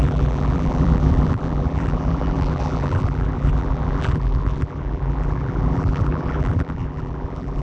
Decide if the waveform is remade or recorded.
remade